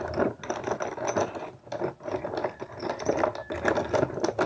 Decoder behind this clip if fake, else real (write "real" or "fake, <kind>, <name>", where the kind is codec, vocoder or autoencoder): real